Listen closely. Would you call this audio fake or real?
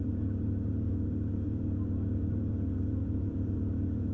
fake